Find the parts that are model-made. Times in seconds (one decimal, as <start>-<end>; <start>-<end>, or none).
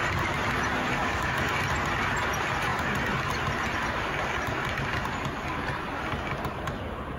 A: 1.0-1.5